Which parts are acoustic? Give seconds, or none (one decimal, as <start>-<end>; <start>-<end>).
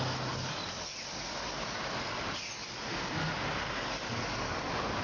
0.0-5.0